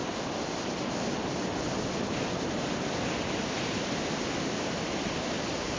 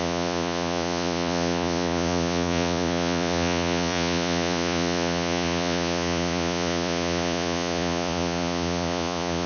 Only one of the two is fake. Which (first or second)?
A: second